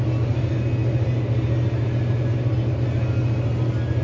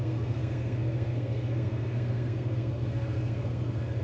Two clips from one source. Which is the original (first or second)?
first